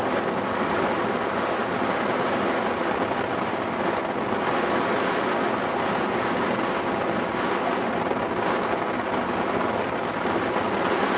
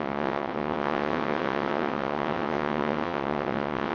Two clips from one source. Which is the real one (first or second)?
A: first